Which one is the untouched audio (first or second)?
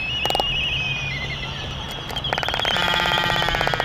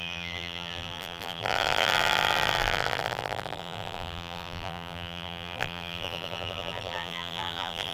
first